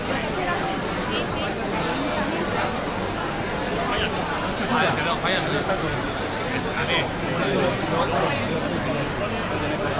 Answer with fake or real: real